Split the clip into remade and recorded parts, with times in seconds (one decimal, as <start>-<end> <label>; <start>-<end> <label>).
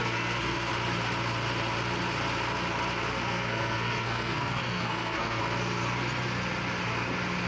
0.0-0.7 remade; 0.7-3.1 recorded; 3.1-5.4 remade; 5.4-7.5 recorded